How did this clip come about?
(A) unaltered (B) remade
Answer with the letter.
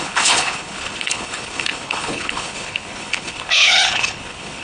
B